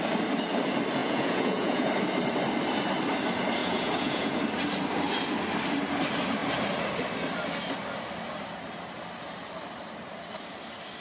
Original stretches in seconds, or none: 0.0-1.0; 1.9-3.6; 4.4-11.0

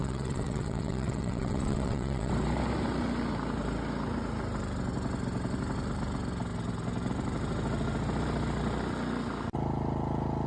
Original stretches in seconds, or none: 2.3-10.5

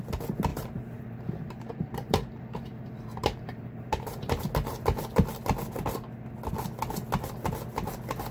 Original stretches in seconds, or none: 0.0-0.5; 4.4-8.3

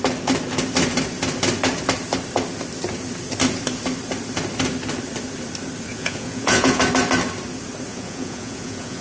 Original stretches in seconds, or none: 0.0-5.9; 6.8-7.9